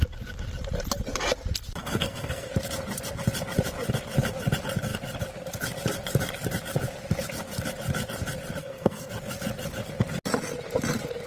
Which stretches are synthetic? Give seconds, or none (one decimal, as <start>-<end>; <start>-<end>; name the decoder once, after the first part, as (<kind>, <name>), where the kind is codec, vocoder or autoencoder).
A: 1.8-2.5 (codec, SNAC); 8.6-9.1